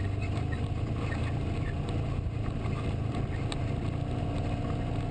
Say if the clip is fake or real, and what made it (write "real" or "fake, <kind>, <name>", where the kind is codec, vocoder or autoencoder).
real